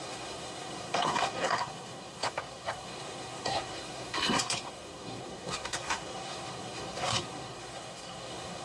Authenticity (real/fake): fake